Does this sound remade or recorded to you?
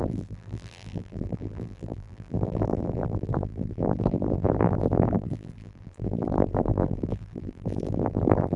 remade